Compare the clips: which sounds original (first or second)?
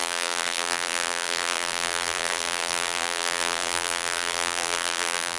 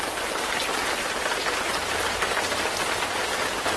second